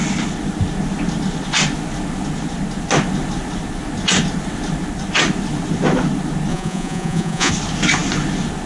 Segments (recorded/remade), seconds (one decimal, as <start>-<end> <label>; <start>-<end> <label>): 0.0-6.5 recorded; 6.5-7.5 remade; 7.5-8.7 recorded